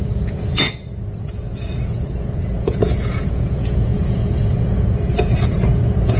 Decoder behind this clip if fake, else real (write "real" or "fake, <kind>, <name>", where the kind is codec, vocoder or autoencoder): fake, vocoder, Vocos